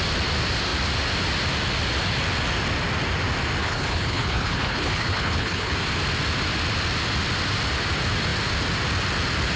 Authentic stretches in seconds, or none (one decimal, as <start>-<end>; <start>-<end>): 0.0-3.6; 5.7-9.6